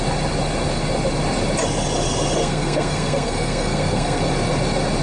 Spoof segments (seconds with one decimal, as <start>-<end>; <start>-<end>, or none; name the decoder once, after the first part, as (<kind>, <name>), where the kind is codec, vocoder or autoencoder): 2.4-4.2 (codec, SNAC)